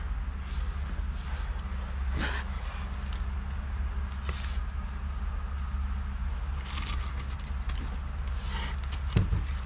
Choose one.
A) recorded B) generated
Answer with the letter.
A